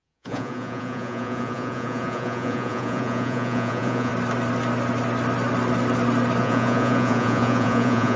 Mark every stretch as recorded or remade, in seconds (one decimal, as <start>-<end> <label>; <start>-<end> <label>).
0.0-4.1 remade; 4.1-6.4 recorded; 6.4-8.2 remade